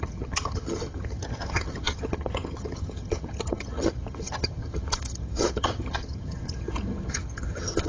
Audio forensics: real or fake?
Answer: fake